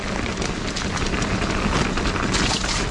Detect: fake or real real